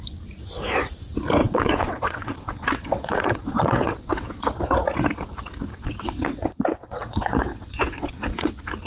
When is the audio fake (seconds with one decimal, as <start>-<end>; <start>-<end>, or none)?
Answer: 1.4-4.3; 5.7-8.5